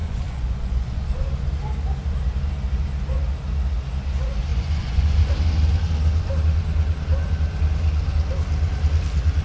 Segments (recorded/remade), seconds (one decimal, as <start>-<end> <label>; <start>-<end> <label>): 0.0-1.0 remade; 1.0-4.5 recorded; 4.5-5.3 remade; 5.3-9.4 recorded